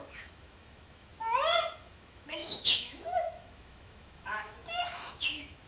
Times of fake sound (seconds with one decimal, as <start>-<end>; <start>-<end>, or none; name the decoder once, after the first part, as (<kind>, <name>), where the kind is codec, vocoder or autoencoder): 0.0-1.1 (autoencoder, DAC-VAE); 1.8-5.7